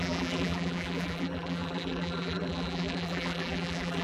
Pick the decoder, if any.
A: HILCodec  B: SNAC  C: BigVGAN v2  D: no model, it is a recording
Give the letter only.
C